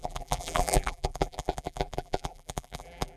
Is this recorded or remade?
remade